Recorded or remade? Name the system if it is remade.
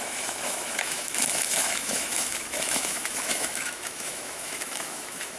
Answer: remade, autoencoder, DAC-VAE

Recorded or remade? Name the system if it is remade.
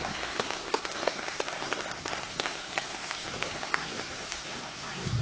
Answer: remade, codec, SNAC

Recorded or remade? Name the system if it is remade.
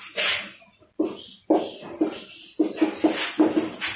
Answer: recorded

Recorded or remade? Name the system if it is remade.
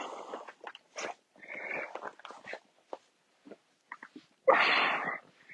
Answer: recorded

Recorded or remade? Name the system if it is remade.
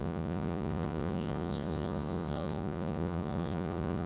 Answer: remade, vocoder, Vocos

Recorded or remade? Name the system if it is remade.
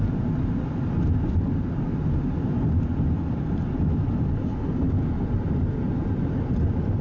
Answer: recorded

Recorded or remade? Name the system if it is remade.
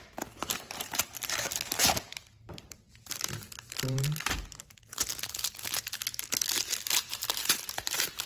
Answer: remade, vocoder, BigVGAN v2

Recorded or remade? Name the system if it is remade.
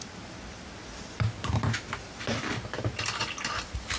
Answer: recorded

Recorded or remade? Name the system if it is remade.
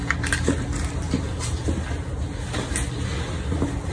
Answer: recorded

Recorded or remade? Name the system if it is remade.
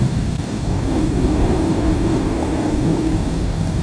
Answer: remade, codec, DAC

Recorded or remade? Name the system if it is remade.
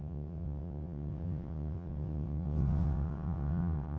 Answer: remade, vocoder, WaveNeXt